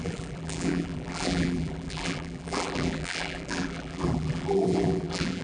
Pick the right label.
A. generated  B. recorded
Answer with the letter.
A